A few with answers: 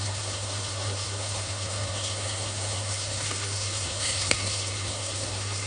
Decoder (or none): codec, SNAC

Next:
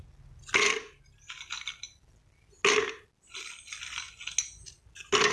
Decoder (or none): none